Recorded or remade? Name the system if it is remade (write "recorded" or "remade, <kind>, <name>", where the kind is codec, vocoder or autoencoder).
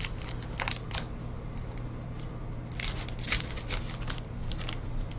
recorded